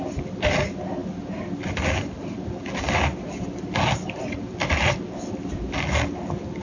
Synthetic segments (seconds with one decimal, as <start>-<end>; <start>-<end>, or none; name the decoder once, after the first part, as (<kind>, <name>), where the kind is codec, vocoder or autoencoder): none